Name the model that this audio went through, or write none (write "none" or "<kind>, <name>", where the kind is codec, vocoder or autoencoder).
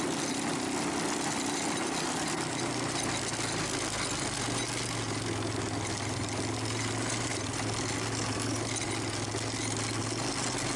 none